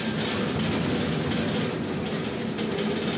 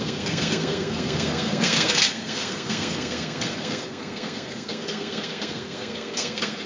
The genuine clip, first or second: first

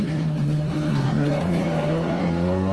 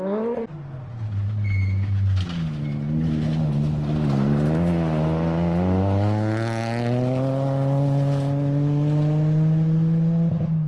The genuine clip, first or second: second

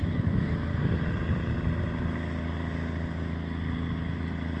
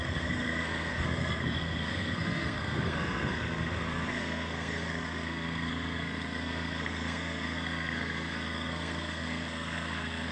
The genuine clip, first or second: first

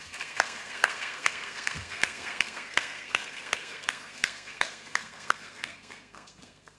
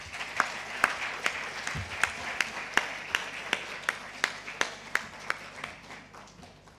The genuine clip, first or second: second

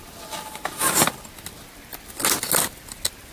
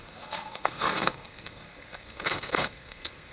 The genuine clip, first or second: first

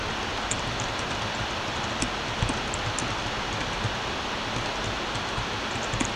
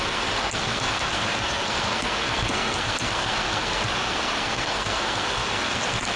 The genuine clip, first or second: first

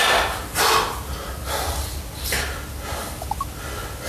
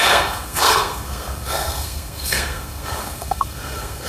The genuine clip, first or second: first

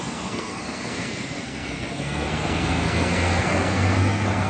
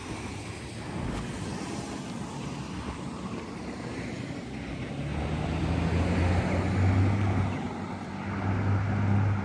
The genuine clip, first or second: second